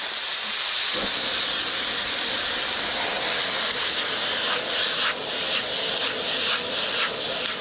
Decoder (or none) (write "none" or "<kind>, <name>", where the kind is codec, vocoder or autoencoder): none